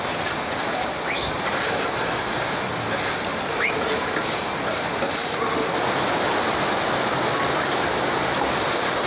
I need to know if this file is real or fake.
real